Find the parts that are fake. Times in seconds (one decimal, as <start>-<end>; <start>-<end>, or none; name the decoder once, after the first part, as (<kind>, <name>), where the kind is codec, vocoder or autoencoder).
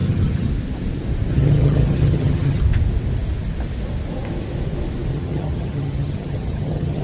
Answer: 0.0-0.5 (vocoder, HiFi-GAN); 1.3-2.6; 5.1-7.0